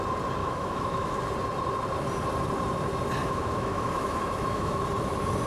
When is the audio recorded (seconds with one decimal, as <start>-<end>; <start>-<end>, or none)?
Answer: 0.0-0.4; 1.2-3.2; 4.8-5.5